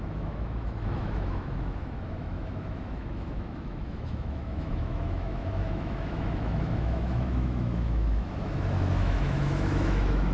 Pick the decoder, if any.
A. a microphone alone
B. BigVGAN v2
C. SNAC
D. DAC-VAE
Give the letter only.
D